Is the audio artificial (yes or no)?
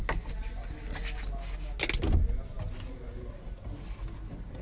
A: no